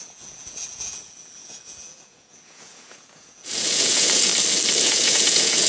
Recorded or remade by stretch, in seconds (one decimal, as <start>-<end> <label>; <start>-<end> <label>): 0.0-4.3 remade; 4.3-4.8 recorded; 4.8-5.7 remade